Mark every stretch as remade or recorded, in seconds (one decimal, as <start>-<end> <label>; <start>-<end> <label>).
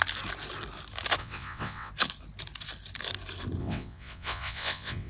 0.0-1.2 recorded; 1.2-1.9 remade; 1.9-3.6 recorded; 3.6-5.1 remade